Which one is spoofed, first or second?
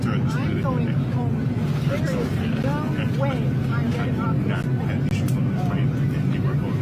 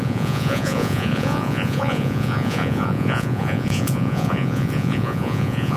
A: second